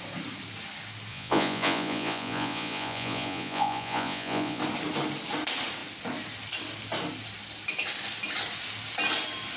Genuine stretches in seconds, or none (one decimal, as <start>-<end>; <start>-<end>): 0.0-1.1; 4.6-9.6